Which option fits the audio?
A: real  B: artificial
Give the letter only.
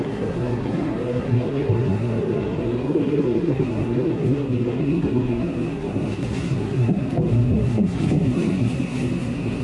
B